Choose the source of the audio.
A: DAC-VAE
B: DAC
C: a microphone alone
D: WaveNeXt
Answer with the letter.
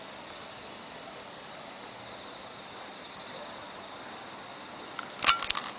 C